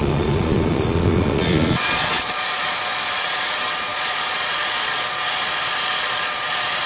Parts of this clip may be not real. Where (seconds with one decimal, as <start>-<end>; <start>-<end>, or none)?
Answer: 0.0-6.9